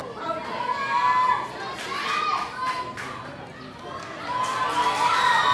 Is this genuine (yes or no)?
yes